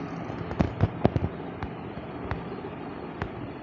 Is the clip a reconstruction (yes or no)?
no